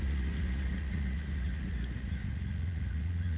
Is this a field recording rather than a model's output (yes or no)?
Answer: no